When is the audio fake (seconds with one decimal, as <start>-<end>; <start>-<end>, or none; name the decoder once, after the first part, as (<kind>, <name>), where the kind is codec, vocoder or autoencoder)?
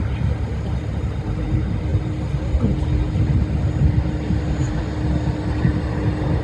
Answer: none